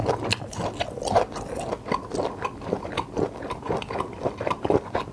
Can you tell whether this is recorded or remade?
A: recorded